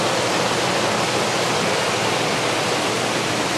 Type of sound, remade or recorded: recorded